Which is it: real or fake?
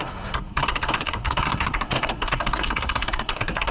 fake